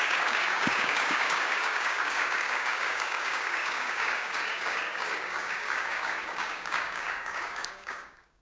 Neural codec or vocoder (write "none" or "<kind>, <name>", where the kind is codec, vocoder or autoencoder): codec, DAC